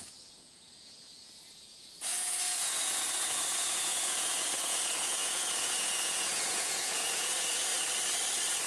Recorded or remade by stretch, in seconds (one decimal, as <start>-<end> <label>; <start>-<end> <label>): 0.0-7.7 remade; 7.7-8.7 recorded